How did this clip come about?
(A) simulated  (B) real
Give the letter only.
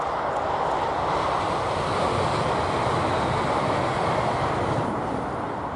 B